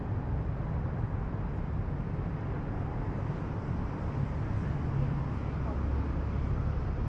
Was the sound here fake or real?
real